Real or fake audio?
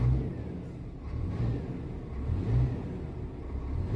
real